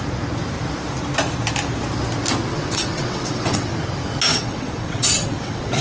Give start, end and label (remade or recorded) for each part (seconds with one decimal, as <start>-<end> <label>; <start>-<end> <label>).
0.0-2.5 recorded; 2.5-3.7 remade; 3.7-4.3 recorded; 4.3-5.8 remade